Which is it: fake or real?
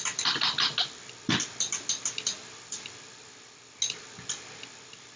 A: real